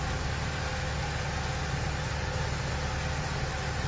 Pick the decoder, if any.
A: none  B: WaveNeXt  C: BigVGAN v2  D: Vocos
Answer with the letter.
A